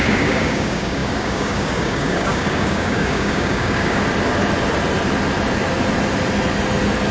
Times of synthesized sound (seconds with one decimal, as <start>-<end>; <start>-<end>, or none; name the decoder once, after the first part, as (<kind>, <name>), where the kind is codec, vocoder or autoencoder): 0.0-4.0 (codec, DAC)